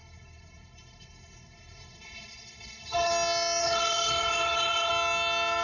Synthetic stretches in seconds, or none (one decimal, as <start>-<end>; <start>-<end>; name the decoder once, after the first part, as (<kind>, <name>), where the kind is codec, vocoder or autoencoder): 0.0-3.1 (codec, HILCodec); 3.6-4.9